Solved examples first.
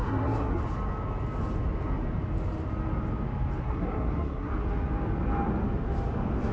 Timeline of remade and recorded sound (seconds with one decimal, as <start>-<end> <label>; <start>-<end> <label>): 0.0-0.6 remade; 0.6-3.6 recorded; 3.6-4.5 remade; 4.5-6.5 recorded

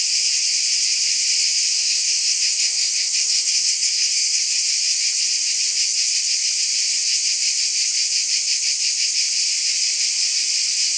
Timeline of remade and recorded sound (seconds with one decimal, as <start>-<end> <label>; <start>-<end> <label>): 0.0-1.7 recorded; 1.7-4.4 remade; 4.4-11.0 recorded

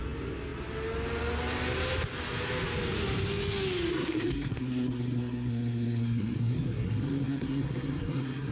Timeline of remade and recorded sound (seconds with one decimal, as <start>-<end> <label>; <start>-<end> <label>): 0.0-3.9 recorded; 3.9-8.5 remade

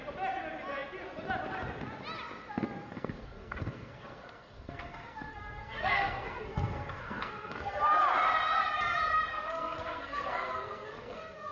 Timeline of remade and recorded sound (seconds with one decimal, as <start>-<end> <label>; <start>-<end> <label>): 0.0-2.8 recorded; 2.8-7.8 remade; 7.8-9.3 recorded; 9.3-11.5 remade

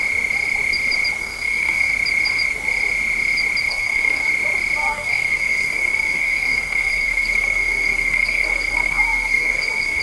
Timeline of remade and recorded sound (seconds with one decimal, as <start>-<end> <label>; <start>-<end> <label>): 0.0-1.2 recorded; 1.2-1.9 remade; 1.9-3.7 recorded; 3.7-4.3 remade; 4.3-4.8 recorded; 4.8-10.0 remade

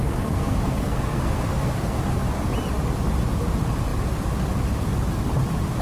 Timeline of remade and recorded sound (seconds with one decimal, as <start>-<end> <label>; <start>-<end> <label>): 0.0-2.0 remade; 2.0-5.8 recorded